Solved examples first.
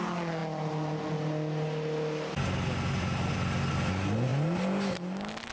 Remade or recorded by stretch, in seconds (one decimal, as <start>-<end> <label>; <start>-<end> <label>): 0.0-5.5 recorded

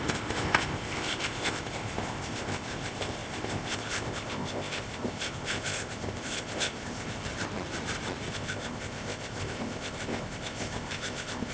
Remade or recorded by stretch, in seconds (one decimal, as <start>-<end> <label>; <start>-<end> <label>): 0.0-7.3 remade; 7.3-8.3 recorded; 8.3-11.5 remade

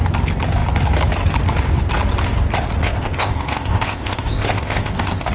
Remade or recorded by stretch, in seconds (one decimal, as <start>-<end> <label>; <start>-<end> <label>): 0.0-2.8 recorded; 2.8-5.3 remade

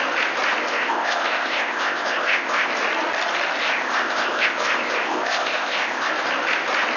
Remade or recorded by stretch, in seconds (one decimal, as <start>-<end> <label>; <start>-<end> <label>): 0.0-0.6 recorded; 0.6-2.7 remade; 2.7-3.6 recorded; 3.6-6.1 remade; 6.1-7.0 recorded

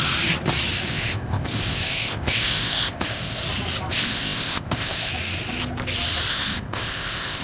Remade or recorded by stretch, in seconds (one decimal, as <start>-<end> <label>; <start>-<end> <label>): 0.0-0.9 recorded; 0.9-3.4 remade; 3.4-3.9 recorded; 3.9-5.1 remade; 5.1-6.3 recorded; 6.3-7.4 remade

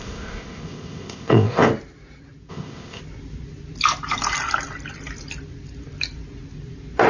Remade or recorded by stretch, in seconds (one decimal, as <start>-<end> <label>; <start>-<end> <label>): 0.0-1.7 remade; 1.7-2.5 recorded; 2.5-3.0 remade; 3.0-7.1 recorded

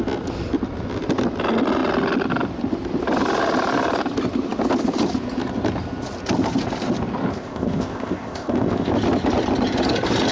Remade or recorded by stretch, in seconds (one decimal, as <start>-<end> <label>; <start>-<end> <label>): 0.0-7.3 recorded; 7.3-8.9 remade; 8.9-10.3 recorded